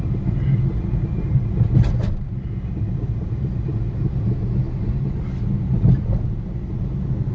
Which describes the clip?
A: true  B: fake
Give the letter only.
A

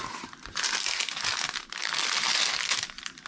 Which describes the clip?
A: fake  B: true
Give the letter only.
B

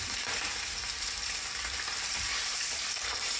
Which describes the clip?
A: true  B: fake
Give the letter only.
B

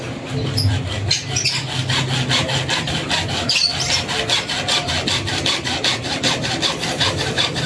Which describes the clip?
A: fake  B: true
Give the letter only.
B